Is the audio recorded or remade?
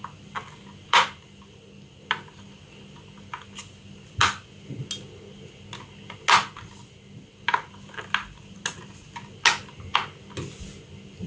recorded